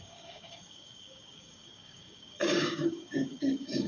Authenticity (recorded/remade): remade